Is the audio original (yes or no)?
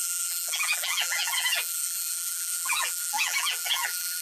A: no